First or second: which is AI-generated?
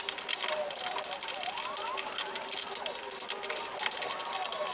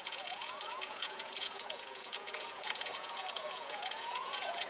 second